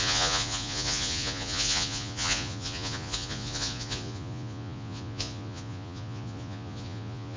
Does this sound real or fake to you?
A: fake